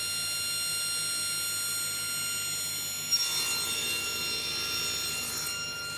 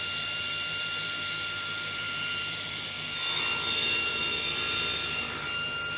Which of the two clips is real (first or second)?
first